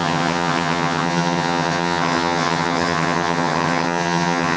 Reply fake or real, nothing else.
fake